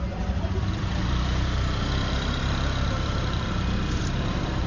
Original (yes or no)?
no